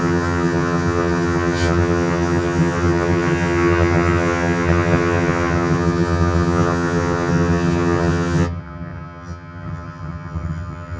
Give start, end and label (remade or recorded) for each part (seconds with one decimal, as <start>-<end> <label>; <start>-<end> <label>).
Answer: 0.0-11.0 remade